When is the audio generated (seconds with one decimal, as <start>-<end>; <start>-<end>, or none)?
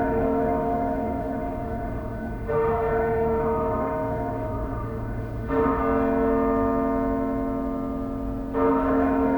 0.0-5.8; 8.7-9.4